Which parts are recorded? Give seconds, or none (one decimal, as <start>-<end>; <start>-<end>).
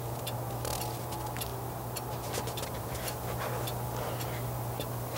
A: 0.0-5.2